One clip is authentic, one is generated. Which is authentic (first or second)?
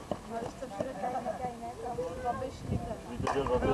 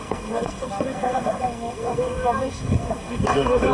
first